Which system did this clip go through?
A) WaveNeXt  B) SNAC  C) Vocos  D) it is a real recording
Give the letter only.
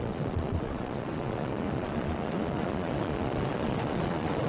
C